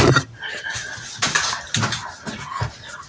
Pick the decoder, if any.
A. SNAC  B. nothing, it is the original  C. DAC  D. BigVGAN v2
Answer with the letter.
B